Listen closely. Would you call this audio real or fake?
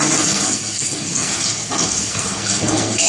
fake